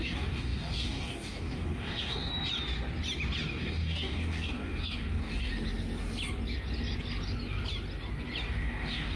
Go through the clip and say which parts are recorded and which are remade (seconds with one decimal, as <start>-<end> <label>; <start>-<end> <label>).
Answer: 0.0-2.3 remade; 2.3-3.5 recorded; 3.5-5.5 remade; 5.5-8.5 recorded; 8.5-9.2 remade